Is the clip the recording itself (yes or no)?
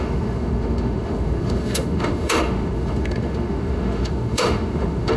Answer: no